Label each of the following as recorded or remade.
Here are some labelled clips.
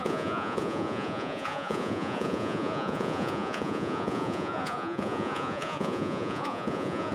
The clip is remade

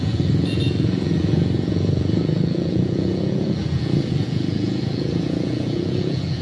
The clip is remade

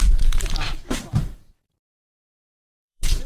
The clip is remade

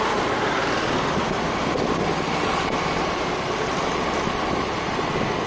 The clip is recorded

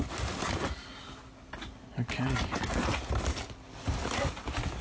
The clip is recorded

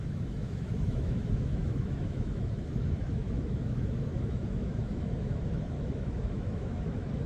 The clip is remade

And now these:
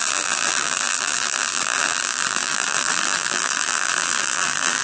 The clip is remade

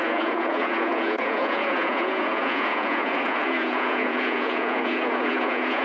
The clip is remade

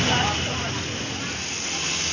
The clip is recorded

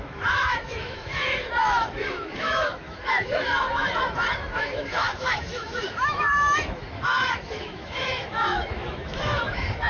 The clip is remade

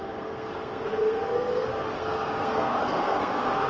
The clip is remade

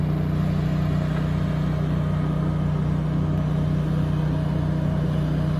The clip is recorded